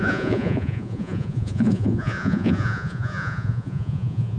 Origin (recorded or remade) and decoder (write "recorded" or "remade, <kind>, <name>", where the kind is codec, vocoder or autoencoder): remade, vocoder, Vocos